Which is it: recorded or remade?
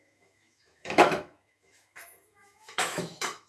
remade